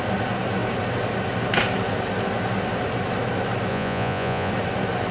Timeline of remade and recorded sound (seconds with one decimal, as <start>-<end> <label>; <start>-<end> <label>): 0.0-3.7 recorded; 3.7-4.5 remade; 4.5-5.1 recorded